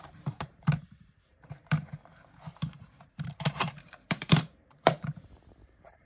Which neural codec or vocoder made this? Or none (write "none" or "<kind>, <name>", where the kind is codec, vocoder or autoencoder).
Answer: vocoder, BigVGAN v2